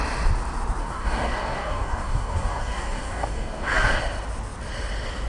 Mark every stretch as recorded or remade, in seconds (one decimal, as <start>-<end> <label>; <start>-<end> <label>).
0.0-0.8 recorded; 0.8-4.0 remade; 4.0-5.3 recorded